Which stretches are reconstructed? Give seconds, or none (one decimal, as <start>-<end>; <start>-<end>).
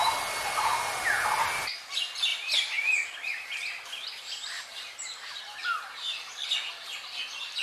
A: 2.3-5.4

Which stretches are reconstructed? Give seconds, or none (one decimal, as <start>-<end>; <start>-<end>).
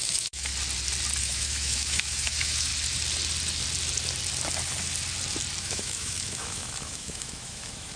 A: 0.0-0.5; 1.2-2.7; 5.6-8.0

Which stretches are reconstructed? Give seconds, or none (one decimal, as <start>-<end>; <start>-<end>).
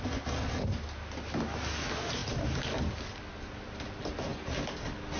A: none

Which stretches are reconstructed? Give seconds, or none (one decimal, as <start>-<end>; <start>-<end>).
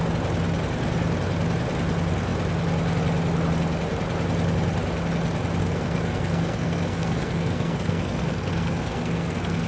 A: 5.6-9.7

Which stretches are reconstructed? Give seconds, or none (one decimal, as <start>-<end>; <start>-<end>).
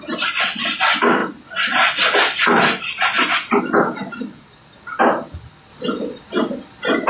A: none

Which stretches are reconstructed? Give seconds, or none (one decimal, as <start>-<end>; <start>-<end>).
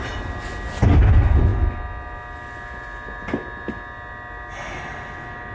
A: none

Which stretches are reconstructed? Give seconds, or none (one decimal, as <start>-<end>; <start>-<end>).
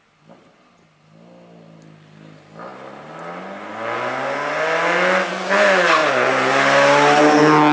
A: none